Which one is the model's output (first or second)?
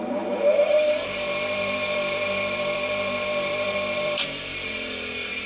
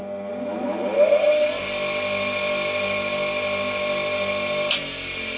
first